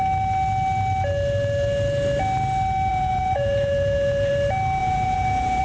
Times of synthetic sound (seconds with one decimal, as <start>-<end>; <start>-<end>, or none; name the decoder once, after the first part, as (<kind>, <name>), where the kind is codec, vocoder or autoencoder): 2.9-4.3 (vocoder, Vocos); 4.8-5.6